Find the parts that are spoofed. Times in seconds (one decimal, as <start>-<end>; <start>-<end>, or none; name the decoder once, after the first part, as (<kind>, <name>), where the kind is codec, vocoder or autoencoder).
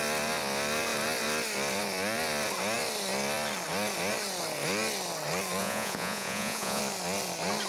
5.6-6.8 (vocoder, Vocos)